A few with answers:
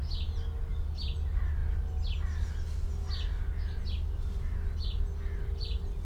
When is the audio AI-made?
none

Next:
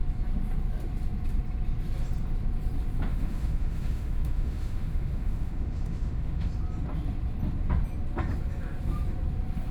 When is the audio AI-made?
3.1-6.5 (autoencoder, DAC-VAE)

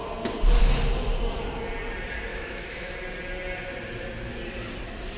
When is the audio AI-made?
2.3-2.9 (autoencoder, DAC-VAE)

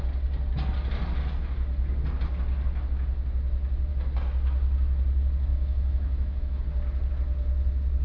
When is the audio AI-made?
5.5-6.6 (autoencoder, DAC-VAE)

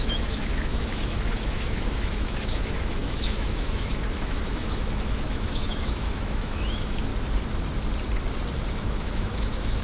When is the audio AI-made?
0.0-7.1 (autoencoder, DAC-VAE); 8.6-9.8

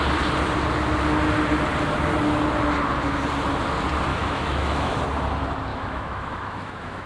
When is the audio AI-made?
4.1-5.0 (autoencoder, DAC-VAE); 5.7-7.1